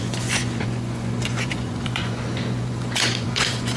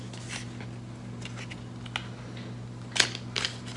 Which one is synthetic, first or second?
first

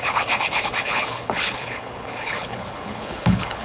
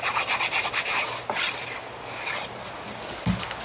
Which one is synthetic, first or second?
first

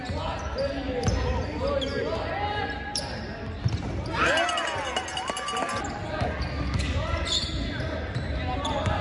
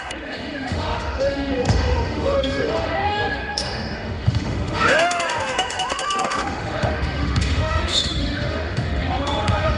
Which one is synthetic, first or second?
second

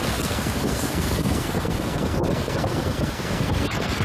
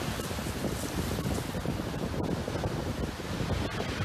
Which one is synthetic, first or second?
first